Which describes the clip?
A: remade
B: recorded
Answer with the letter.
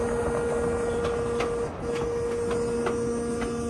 B